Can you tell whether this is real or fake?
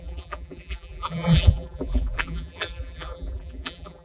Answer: fake